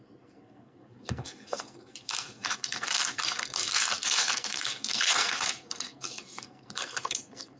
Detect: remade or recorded remade